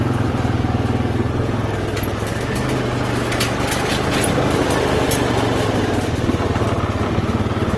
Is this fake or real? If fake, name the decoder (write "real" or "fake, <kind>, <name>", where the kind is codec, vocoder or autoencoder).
real